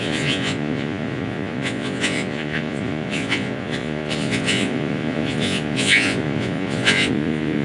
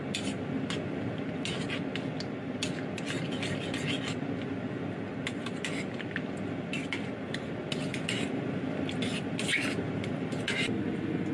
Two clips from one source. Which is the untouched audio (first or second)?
second